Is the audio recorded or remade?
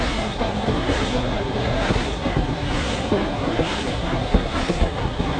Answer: remade